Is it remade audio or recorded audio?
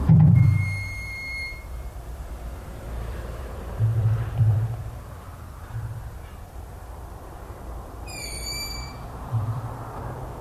remade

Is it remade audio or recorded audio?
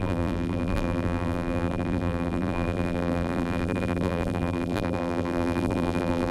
remade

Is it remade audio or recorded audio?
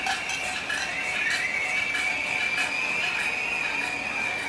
recorded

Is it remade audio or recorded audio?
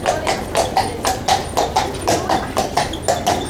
recorded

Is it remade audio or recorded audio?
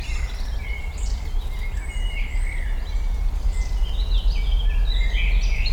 recorded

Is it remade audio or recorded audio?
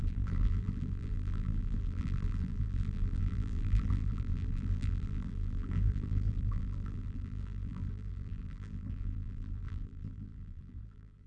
remade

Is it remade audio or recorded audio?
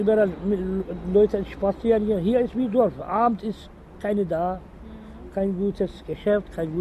recorded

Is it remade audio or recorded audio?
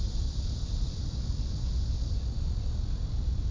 remade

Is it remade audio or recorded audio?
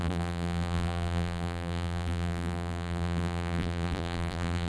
remade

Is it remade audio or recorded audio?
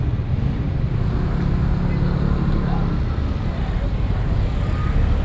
recorded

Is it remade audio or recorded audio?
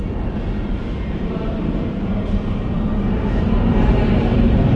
remade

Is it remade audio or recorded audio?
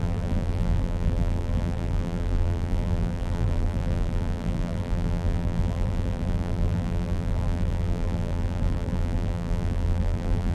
remade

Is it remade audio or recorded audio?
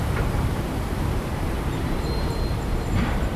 remade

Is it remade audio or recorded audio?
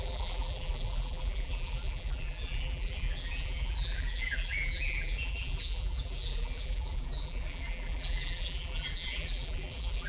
remade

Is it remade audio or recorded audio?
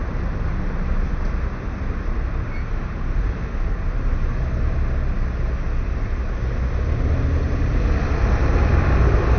recorded